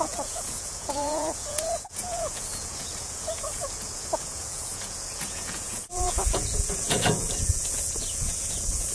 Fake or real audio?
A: fake